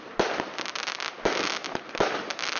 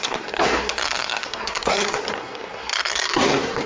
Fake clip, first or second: second